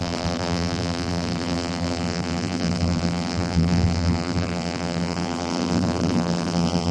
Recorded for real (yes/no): no